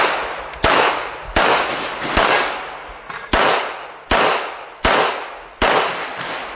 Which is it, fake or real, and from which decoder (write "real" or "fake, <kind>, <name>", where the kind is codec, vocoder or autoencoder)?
real